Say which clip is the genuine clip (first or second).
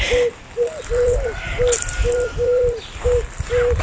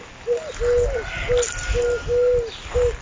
second